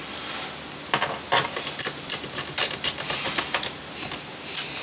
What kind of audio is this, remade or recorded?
recorded